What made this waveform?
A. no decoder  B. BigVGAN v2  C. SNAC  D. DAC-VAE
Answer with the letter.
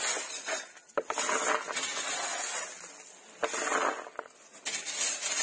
A